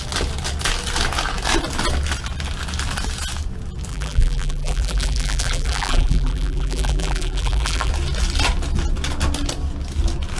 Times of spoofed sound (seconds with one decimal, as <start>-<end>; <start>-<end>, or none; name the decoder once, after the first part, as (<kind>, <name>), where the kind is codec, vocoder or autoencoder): 3.9-7.9 (vocoder, BigVGAN v2)

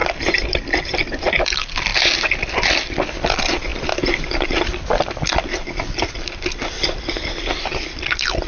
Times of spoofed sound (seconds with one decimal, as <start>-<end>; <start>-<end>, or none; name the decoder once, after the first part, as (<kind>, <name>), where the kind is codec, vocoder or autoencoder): 0.0-8.5 (vocoder, BigVGAN v2)

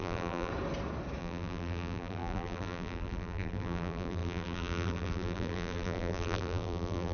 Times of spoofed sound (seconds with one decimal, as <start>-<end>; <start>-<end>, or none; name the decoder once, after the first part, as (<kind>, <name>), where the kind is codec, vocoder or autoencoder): 0.0-0.5 (vocoder, BigVGAN v2); 1.2-7.1

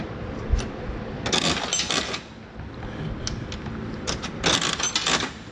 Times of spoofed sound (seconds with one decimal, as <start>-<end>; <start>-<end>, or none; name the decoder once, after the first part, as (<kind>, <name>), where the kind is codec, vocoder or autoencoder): none